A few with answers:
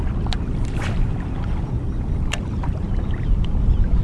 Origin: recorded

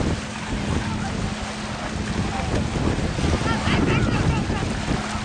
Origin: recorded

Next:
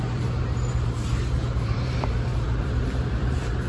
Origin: remade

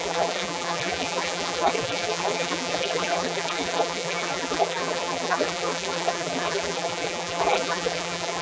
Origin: remade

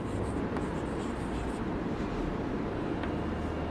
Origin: recorded